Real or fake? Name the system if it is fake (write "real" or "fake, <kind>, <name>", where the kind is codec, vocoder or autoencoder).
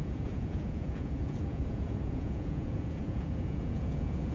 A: fake, vocoder, Vocos